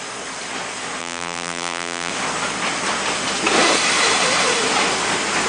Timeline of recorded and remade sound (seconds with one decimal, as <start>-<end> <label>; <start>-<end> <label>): 0.0-1.0 recorded; 1.0-2.1 remade; 2.1-5.5 recorded